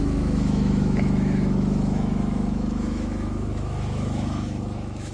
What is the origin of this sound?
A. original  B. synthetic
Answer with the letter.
B